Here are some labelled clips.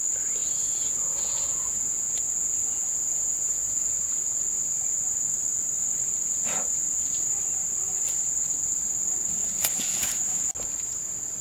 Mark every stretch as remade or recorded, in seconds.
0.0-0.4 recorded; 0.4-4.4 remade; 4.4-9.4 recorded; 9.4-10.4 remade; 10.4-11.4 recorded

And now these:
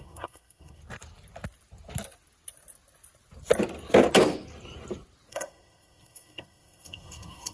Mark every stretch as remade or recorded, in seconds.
0.0-0.8 remade; 0.8-5.3 recorded; 5.3-7.5 remade

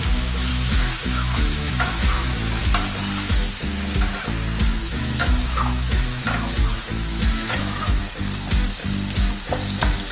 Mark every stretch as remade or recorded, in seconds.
0.0-0.5 recorded; 0.5-2.6 remade; 2.6-4.9 recorded; 4.9-8.0 remade; 8.0-10.1 recorded

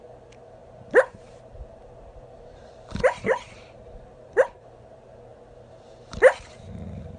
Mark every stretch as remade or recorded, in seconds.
0.0-0.6 recorded; 0.6-4.8 remade; 4.8-7.2 recorded

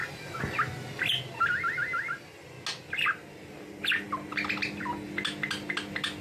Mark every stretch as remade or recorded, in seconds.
0.0-6.2 recorded

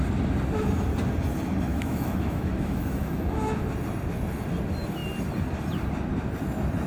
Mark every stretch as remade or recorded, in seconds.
0.0-1.7 recorded; 1.7-3.6 remade; 3.6-6.9 recorded

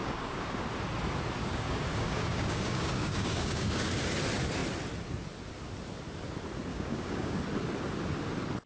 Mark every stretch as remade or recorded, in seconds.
0.0-0.6 remade; 0.6-1.4 recorded; 1.4-3.8 remade; 3.8-6.7 recorded; 6.7-7.4 remade; 7.4-8.7 recorded